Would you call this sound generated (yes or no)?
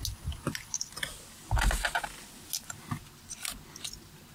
no